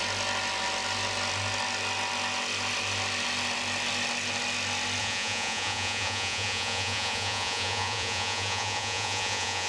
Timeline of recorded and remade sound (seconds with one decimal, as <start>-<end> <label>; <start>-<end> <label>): 0.0-5.0 recorded; 5.0-9.7 remade